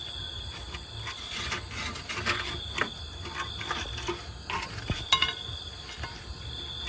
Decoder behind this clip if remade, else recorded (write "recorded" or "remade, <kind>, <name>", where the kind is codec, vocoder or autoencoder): recorded